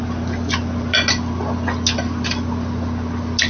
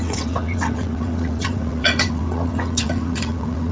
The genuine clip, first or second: first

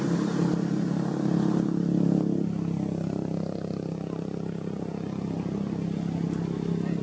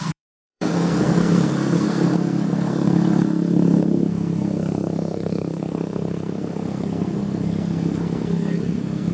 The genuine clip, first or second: first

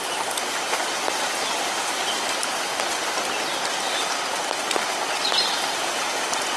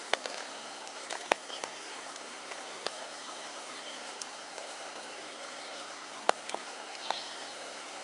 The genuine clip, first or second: first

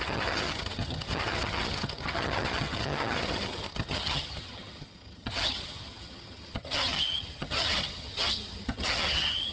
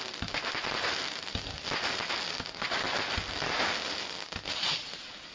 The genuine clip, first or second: second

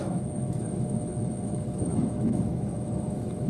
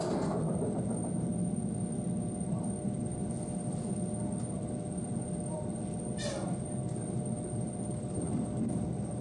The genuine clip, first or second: second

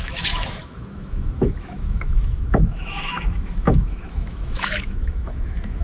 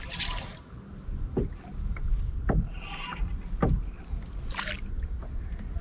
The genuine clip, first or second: second